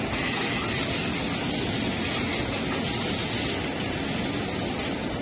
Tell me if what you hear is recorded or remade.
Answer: recorded